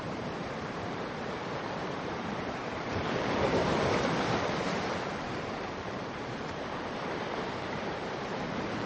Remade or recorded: remade